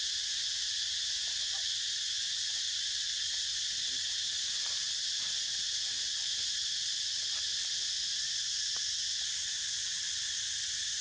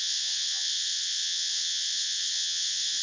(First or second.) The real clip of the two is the first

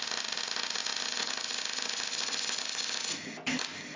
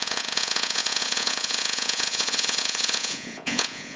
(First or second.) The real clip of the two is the first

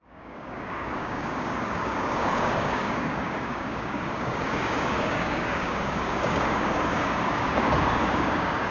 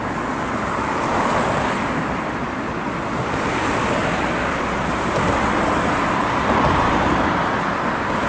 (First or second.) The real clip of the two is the second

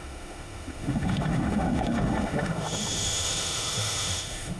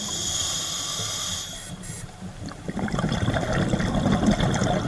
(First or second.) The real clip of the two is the second